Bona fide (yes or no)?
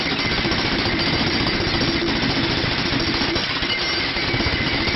yes